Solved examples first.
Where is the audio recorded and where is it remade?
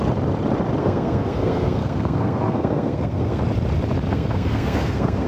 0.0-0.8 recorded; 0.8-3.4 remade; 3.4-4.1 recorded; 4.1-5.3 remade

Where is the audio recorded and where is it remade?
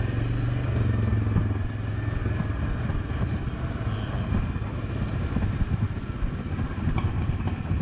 0.0-7.8 recorded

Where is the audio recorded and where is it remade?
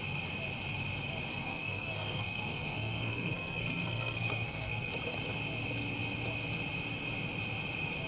0.0-1.3 recorded; 1.3-4.9 remade; 4.9-8.1 recorded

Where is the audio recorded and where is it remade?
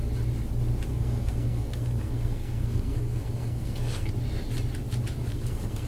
0.0-0.9 recorded; 0.9-4.1 remade; 4.1-5.3 recorded; 5.3-5.9 remade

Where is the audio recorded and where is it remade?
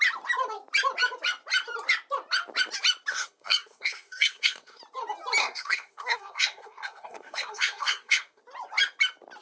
0.0-3.1 recorded; 3.1-4.8 remade; 4.8-5.4 recorded; 5.4-8.4 remade; 8.4-9.4 recorded